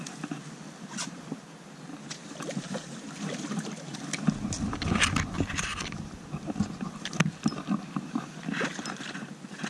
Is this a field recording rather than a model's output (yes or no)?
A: yes